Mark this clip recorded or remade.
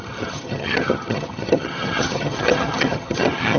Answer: remade